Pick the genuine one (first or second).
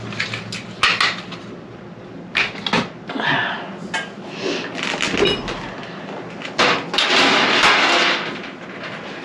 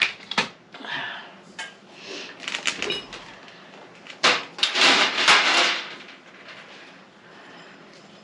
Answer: first